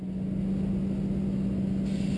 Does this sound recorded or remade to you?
recorded